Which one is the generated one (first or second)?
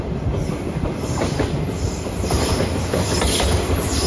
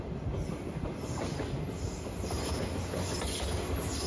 first